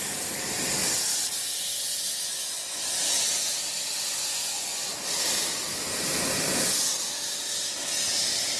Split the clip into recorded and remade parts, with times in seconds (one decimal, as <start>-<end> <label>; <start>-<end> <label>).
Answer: 0.0-2.3 recorded; 2.3-2.9 remade; 2.9-4.2 recorded; 4.2-4.8 remade; 4.8-8.6 recorded